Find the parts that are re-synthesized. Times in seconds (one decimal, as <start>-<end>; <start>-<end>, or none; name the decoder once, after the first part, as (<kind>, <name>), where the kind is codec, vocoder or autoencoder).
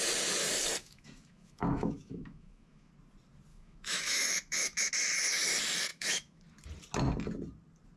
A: 0.8-2.9 (autoencoder, DAC-VAE); 3.5-4.9; 5.9-6.4